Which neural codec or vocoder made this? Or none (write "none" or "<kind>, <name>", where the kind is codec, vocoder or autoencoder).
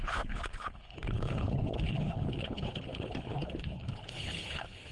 codec, HILCodec